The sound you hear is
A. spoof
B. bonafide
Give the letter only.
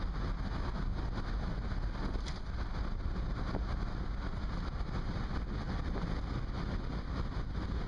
B